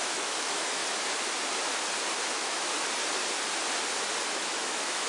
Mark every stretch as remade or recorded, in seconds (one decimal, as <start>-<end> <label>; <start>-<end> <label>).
0.0-0.8 remade; 0.8-2.2 recorded; 2.2-2.7 remade; 2.7-4.3 recorded; 4.3-5.1 remade